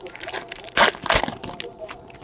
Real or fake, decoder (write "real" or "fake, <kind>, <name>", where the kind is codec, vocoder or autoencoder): real